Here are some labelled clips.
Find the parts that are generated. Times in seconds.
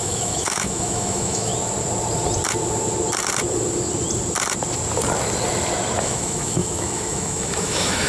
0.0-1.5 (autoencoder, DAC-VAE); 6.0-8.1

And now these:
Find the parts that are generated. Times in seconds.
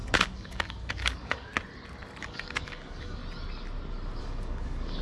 0.0-1.5 (codec, DAC); 2.2-3.2; 4.2-5.0